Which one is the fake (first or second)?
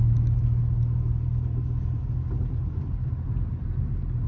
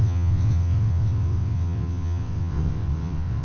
second